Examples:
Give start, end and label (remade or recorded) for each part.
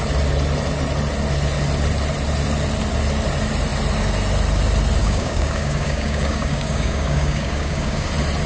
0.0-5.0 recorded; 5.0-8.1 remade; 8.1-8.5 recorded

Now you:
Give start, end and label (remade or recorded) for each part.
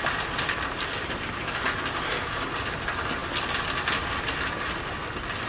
0.0-5.5 recorded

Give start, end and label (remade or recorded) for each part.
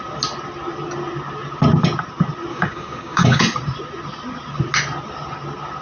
0.0-2.5 recorded; 2.5-3.4 remade; 3.4-5.8 recorded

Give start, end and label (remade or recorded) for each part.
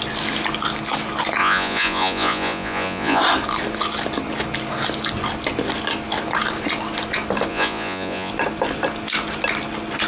0.0-1.4 recorded; 1.4-3.2 remade; 3.2-7.5 recorded; 7.5-8.3 remade; 8.3-10.1 recorded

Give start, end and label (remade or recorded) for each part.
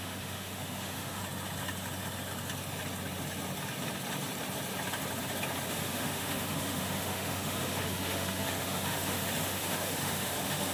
0.0-1.2 remade; 1.2-5.7 recorded; 5.7-10.7 remade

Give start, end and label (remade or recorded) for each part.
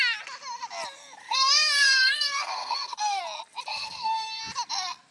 0.0-1.2 recorded; 1.2-3.2 remade; 3.2-3.7 recorded; 3.7-4.4 remade; 4.4-5.1 recorded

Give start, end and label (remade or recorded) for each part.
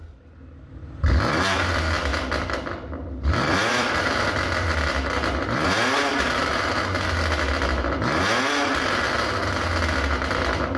0.0-2.1 recorded; 2.1-6.2 remade; 6.2-10.8 recorded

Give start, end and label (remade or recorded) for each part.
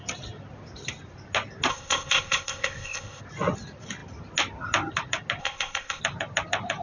0.0-1.7 recorded; 1.7-3.2 remade; 3.2-5.4 recorded; 5.4-6.0 remade; 6.0-6.8 recorded